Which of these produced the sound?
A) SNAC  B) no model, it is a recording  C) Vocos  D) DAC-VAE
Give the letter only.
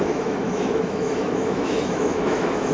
D